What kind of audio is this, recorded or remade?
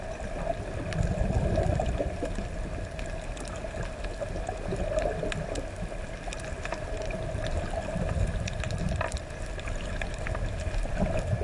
recorded